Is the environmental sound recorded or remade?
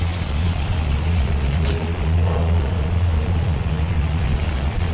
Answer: remade